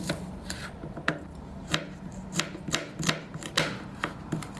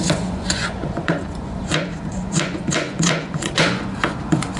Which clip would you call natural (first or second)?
first